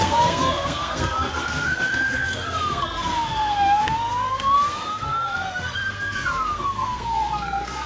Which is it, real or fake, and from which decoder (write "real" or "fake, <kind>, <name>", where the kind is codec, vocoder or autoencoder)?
fake, codec, SNAC